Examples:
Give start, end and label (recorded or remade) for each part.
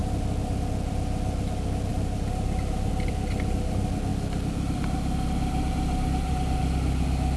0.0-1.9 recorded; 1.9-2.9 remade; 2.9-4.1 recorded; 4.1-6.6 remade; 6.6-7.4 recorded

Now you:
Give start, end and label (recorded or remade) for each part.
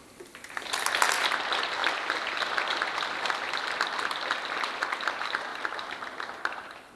0.0-0.8 recorded; 0.8-5.5 remade; 5.5-6.2 recorded; 6.2-7.0 remade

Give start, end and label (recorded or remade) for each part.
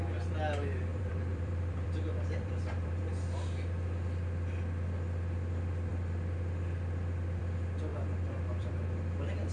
0.0-0.9 recorded; 0.9-3.0 remade; 3.0-7.9 recorded; 7.9-8.7 remade; 8.7-9.5 recorded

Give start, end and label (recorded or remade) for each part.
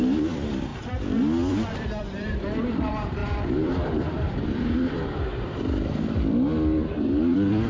0.0-0.7 remade; 0.7-1.5 recorded; 1.5-7.7 remade